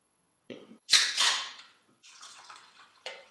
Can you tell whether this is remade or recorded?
remade